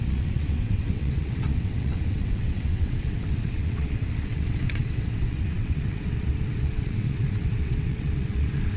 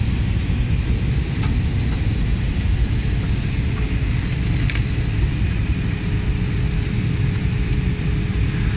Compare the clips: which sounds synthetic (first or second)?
first